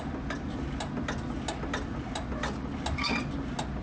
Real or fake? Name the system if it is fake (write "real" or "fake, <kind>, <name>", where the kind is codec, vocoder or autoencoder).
real